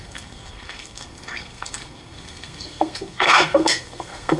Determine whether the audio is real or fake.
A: fake